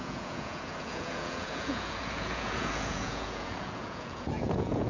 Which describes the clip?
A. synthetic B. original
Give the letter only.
A